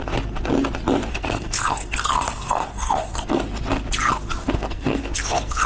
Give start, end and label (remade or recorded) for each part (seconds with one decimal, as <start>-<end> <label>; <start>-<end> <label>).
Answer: 0.0-1.1 recorded; 1.1-3.4 remade; 3.4-4.4 recorded; 4.4-5.7 remade